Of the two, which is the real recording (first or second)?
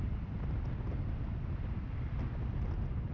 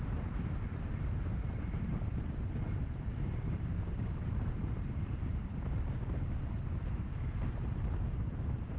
first